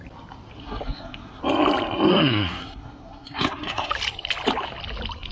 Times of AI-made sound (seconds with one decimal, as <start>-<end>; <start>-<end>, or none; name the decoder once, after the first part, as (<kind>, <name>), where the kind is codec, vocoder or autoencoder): 0.6-1.4 (codec, SNAC); 2.1-3.9